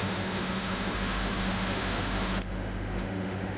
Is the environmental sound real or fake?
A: fake